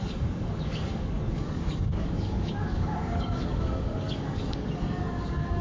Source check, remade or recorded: remade